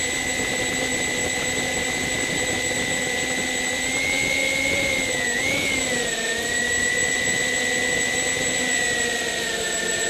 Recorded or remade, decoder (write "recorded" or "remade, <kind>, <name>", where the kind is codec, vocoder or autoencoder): recorded